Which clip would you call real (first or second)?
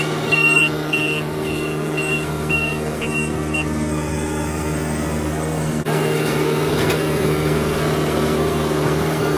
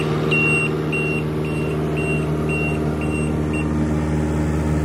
second